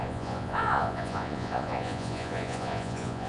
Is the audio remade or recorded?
remade